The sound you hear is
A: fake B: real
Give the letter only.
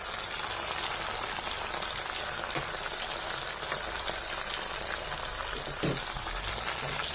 B